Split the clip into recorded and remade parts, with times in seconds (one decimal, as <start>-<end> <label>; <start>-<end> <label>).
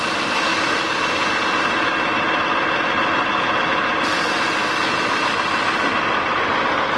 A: 0.0-7.0 recorded